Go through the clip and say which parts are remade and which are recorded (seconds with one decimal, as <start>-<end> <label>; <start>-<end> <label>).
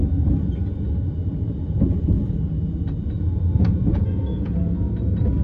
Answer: 0.0-3.9 recorded; 3.9-4.6 remade; 4.6-5.4 recorded